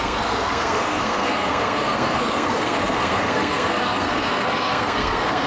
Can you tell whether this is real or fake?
fake